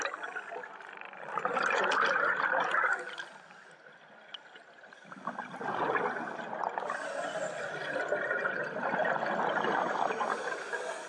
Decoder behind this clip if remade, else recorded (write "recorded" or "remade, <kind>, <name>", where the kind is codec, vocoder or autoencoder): recorded